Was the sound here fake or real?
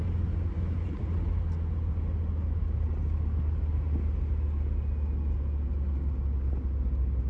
real